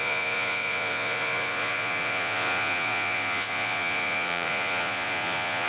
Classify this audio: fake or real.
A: fake